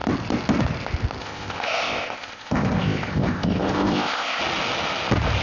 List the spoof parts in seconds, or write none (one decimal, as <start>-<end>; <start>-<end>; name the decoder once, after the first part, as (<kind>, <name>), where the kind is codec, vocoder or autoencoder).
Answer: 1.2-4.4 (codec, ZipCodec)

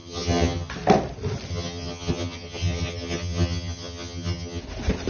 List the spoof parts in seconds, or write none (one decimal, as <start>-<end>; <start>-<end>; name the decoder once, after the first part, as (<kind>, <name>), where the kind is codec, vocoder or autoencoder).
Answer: 0.0-0.7 (vocoder, HiFi-GAN); 1.5-4.6

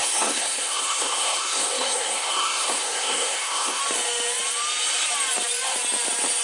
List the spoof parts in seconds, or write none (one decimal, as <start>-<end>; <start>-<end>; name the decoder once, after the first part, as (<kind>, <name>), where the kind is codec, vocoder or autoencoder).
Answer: 0.0-3.8 (codec, SNAC)